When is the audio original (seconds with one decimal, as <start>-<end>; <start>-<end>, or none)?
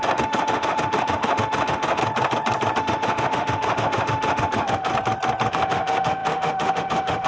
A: 2.0-2.8; 4.9-5.5